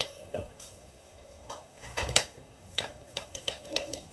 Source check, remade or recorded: remade